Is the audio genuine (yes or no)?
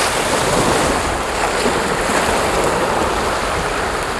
yes